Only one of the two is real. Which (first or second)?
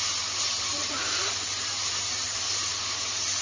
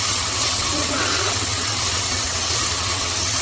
first